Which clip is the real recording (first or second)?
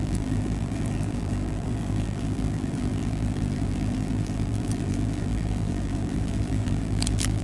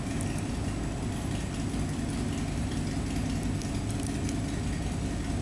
second